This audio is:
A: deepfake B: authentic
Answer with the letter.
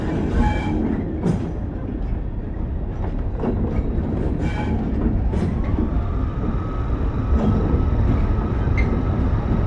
B